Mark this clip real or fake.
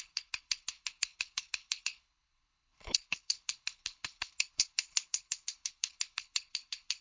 fake